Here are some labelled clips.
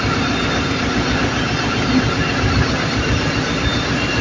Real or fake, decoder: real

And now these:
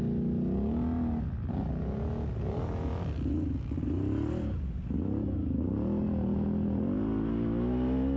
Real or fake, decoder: real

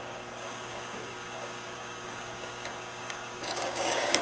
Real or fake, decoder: fake, codec, DAC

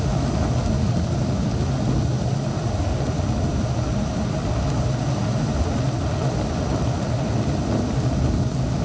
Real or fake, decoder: real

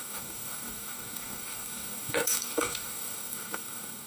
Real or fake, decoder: fake, codec, DAC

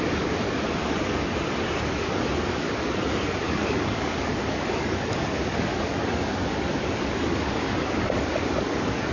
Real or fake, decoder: fake, codec, DAC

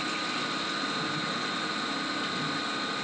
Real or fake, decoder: real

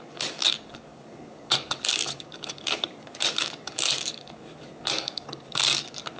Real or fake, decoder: fake, codec, DAC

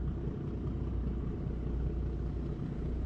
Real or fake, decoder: real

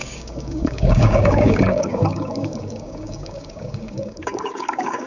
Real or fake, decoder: fake, codec, DAC